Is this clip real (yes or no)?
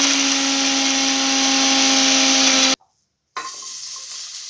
yes